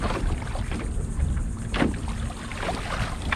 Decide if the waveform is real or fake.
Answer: real